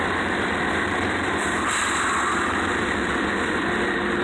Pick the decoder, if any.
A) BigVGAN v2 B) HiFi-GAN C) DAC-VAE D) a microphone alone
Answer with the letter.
A